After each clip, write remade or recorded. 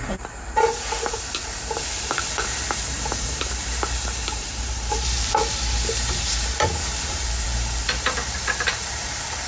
remade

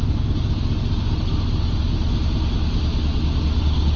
recorded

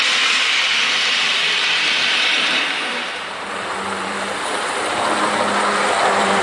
remade